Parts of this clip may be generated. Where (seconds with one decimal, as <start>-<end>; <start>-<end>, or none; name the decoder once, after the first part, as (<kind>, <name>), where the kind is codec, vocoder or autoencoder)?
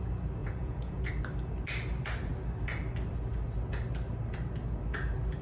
0.4-1.1 (vocoder, Vocos)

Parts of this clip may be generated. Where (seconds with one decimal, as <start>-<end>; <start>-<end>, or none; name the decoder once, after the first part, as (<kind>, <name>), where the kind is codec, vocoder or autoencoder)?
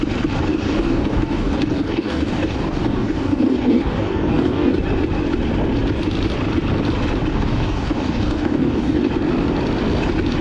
0.5-4.7 (codec, DAC); 7.3-9.1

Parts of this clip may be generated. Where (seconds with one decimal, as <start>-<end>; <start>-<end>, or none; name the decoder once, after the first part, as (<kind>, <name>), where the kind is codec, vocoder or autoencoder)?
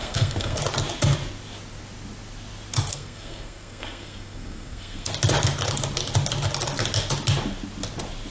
0.0-0.6 (codec, SNAC); 2.9-5.1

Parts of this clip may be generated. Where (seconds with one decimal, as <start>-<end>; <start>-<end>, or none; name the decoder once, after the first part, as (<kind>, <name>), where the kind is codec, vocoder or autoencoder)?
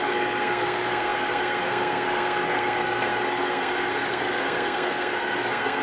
0.0-5.8 (codec, SNAC)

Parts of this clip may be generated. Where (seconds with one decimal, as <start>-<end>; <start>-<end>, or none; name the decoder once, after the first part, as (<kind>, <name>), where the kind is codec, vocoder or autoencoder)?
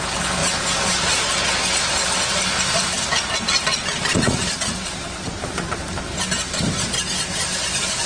0.4-1.3 (vocoder, Vocos); 4.1-5.8